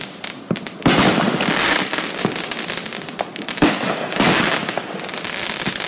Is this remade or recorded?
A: remade